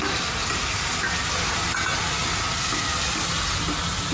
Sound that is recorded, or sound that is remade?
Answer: recorded